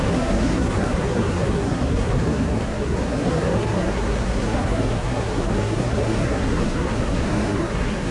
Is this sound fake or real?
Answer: fake